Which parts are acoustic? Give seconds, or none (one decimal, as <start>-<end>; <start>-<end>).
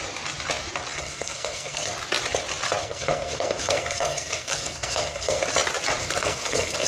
0.0-1.0; 1.9-2.8; 5.4-6.0